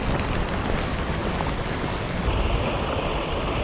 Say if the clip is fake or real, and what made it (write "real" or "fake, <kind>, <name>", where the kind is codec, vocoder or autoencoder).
real